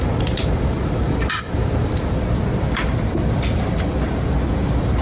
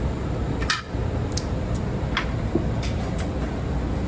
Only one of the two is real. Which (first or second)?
second